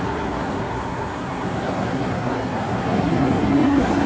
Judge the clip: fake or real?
fake